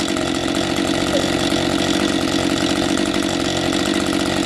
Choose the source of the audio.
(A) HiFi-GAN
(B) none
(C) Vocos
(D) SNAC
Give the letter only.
B